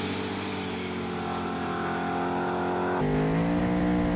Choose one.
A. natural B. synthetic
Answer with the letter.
A